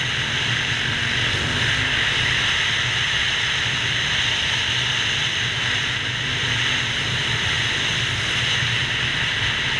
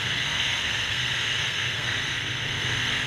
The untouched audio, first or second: first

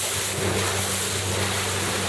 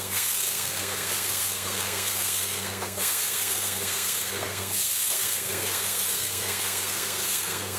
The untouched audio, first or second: first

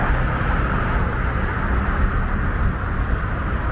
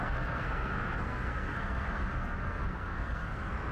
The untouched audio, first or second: first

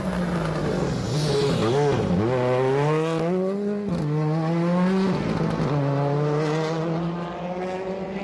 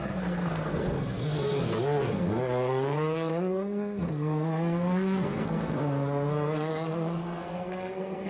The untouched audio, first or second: first